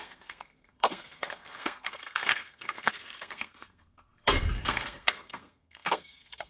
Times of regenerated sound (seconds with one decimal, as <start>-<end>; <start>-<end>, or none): 0.0-6.5